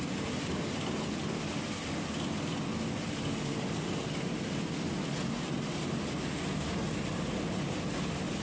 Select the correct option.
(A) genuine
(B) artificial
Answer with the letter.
A